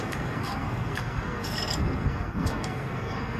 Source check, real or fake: fake